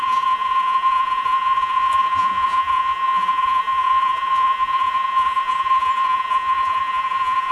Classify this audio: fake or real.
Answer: fake